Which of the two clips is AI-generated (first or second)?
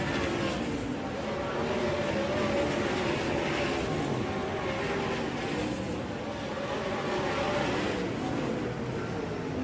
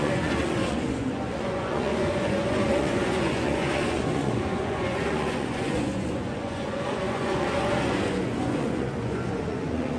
second